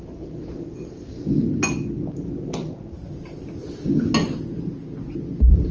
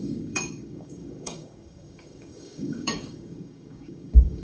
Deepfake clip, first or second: second